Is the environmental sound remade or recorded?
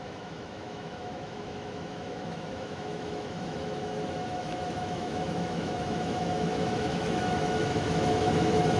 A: remade